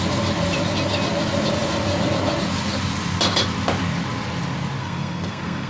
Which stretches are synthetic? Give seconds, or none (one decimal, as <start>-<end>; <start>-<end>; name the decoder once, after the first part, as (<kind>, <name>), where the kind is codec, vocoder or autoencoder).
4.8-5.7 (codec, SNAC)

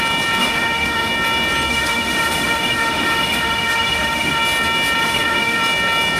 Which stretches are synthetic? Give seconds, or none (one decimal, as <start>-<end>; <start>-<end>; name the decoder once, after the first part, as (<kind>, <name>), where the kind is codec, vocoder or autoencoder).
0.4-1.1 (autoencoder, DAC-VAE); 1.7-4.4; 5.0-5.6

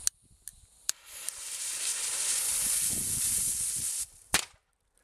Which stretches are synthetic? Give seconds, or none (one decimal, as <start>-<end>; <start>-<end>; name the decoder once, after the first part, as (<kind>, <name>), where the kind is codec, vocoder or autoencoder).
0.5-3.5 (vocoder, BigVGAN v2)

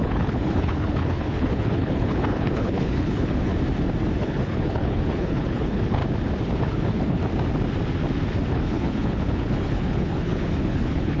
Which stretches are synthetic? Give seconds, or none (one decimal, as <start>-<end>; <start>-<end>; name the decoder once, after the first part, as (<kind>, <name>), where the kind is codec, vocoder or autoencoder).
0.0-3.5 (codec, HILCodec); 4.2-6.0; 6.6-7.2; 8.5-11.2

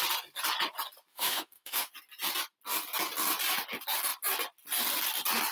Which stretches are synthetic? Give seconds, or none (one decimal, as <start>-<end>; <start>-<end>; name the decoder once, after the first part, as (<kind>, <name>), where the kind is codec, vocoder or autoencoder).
1.1-1.9 (autoencoder, DAC-VAE)

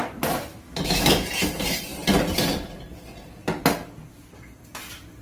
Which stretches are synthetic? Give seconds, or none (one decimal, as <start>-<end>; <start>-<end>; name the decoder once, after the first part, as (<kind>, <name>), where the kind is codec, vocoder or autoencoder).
0.5-1.3 (autoencoder, DAC-VAE)

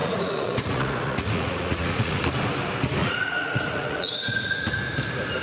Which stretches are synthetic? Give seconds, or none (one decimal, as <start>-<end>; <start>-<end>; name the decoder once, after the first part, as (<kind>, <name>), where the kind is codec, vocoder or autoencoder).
0.0-2.2 (vocoder, Vocos); 3.0-4.7

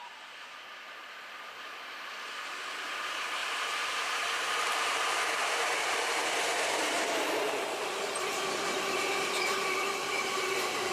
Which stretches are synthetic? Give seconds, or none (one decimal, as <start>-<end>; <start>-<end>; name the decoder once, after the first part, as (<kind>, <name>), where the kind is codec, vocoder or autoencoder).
1.0-2.4 (vocoder, BigVGAN v2); 3.4-7.1